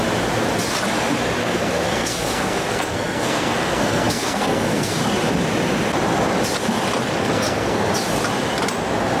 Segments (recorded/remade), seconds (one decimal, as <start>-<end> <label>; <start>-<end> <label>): 0.0-1.4 recorded; 1.4-5.0 remade; 5.0-7.2 recorded; 7.2-7.9 remade; 7.9-9.2 recorded